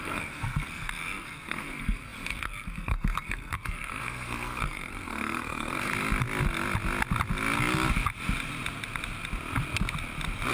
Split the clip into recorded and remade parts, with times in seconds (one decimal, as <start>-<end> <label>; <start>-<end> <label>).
0.0-5.9 remade; 5.9-10.5 recorded